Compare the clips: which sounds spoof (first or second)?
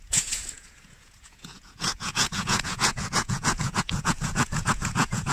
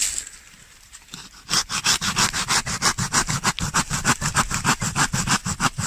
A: first